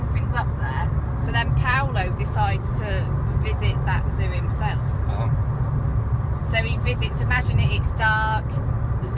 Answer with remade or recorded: recorded